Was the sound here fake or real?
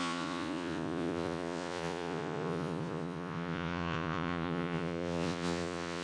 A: fake